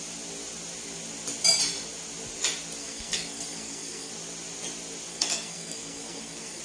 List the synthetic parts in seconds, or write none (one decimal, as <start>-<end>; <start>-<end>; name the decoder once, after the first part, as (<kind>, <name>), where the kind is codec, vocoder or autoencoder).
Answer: 2.8-4.1 (codec, SNAC); 5.1-6.6